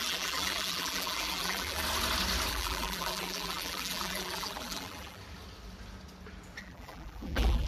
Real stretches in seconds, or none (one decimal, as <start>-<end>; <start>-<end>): 1.8-2.5; 5.2-6.6